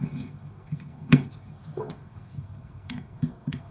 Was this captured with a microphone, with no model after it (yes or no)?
no